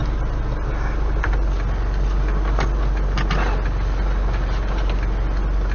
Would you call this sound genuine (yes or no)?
yes